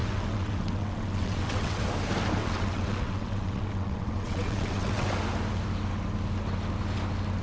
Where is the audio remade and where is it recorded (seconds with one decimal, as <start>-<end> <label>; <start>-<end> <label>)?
0.0-1.8 remade; 1.8-2.4 recorded; 2.4-5.1 remade; 5.1-7.4 recorded